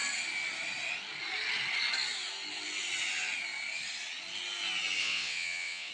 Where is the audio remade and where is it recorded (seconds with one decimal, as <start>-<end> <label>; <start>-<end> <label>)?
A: 0.0-5.0 recorded; 5.0-5.9 remade